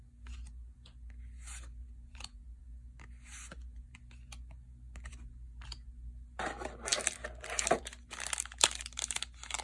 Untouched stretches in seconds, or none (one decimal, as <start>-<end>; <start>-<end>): 0.0-9.6